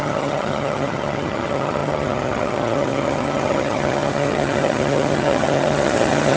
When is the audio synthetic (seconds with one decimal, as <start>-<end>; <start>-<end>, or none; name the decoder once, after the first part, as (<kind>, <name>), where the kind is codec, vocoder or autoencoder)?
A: 0.0-6.4 (vocoder, HiFi-GAN)